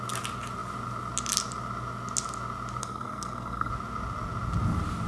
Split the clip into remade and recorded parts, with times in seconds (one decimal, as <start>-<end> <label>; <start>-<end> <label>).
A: 0.0-2.8 recorded; 2.8-3.7 remade; 3.7-5.1 recorded